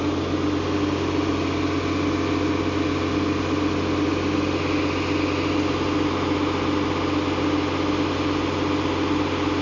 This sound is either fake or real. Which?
real